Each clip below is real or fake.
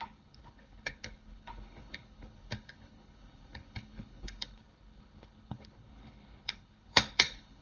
fake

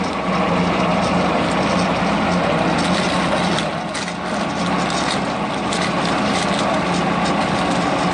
real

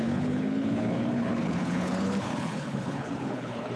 fake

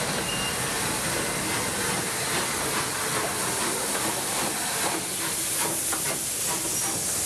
real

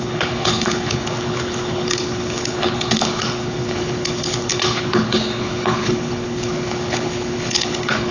fake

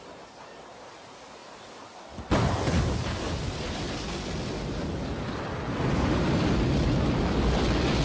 real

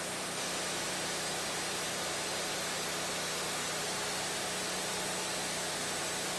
real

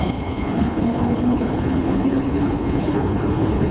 fake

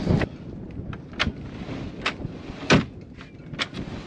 real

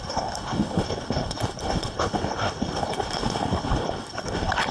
fake